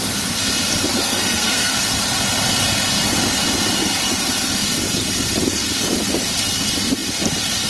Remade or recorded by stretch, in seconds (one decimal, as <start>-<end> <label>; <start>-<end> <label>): 0.0-1.0 recorded; 1.0-1.7 remade; 1.7-7.7 recorded